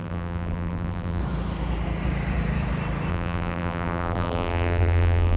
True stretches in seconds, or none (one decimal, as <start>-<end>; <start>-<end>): 1.2-3.1